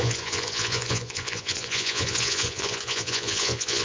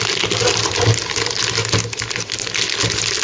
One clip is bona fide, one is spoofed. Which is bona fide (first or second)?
second